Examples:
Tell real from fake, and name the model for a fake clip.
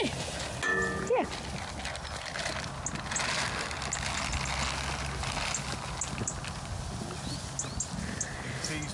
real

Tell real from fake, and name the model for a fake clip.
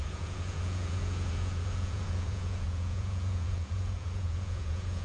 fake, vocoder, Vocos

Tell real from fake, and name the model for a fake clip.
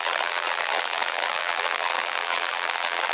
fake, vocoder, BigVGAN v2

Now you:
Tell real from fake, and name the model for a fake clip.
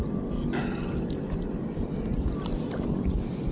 real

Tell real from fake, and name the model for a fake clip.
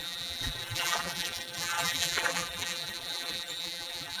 fake, vocoder, BigVGAN v2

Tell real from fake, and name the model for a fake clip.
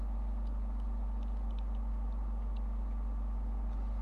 real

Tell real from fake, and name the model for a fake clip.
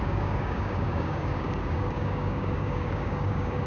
fake, codec, DAC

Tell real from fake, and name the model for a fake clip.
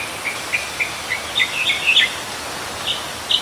real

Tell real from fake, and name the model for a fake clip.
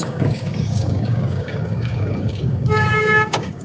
fake, codec, DAC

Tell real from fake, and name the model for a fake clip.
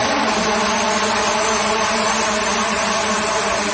real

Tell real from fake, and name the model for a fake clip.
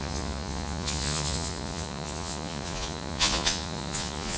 fake, vocoder, Vocos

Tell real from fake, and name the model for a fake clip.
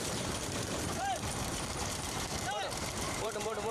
fake, vocoder, BigVGAN v2